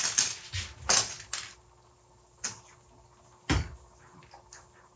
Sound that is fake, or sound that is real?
real